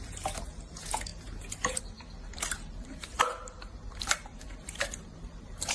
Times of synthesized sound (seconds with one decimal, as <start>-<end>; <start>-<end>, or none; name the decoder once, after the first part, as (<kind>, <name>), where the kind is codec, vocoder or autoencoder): 0.0-3.1 (vocoder, BigVGAN v2); 3.9-5.7